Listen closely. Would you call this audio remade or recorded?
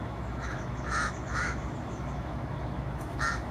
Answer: remade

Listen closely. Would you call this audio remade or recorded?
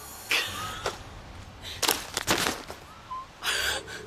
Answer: recorded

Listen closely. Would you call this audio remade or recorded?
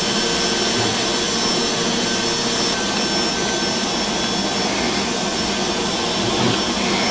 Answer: recorded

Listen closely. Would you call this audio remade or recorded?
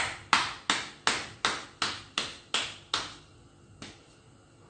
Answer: recorded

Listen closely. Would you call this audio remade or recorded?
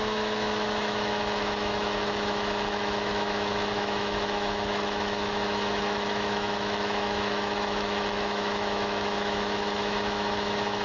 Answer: remade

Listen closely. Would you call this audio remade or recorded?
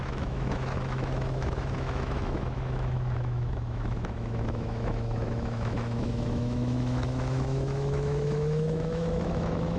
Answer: remade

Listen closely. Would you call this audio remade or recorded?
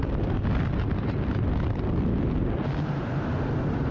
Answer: recorded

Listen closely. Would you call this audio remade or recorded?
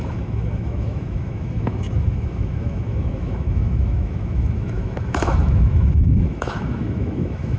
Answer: remade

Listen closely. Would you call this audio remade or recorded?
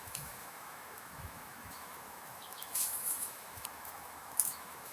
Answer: remade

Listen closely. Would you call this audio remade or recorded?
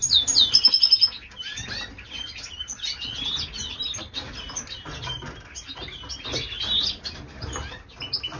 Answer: recorded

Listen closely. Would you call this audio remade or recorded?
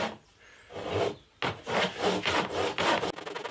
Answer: recorded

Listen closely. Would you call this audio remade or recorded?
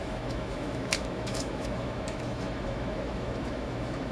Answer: remade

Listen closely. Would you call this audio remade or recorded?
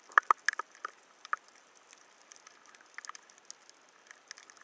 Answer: recorded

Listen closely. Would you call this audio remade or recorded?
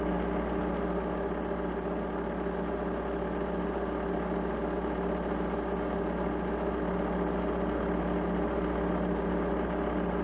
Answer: recorded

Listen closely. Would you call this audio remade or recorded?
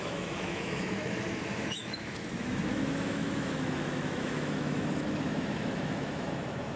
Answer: remade